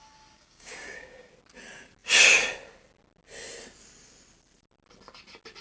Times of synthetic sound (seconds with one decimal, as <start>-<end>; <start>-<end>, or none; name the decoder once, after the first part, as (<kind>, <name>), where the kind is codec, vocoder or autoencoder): 0.4-1.3 (codec, DAC)